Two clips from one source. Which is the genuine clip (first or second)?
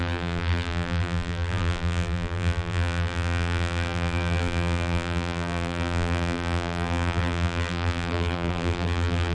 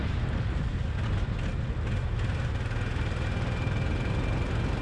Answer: second